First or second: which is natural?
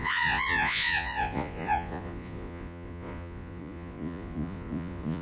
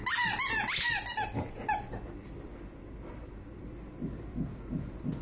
second